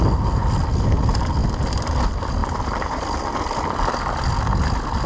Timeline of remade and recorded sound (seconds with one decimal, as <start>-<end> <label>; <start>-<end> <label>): 0.0-2.4 recorded; 2.4-3.6 remade; 3.6-5.1 recorded